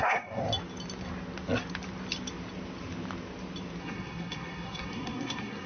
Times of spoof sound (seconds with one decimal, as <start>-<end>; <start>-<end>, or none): 0.0-0.4; 3.8-5.7